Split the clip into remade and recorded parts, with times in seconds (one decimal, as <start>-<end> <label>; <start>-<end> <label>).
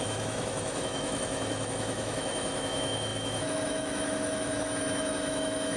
0.0-5.8 remade